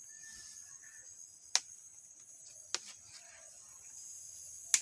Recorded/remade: recorded